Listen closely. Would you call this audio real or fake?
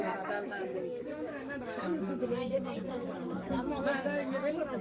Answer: fake